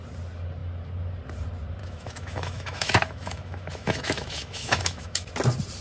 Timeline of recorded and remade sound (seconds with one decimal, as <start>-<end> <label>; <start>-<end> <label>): 0.0-1.8 recorded; 1.8-5.3 remade; 5.3-5.8 recorded